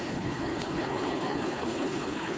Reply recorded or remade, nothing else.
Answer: remade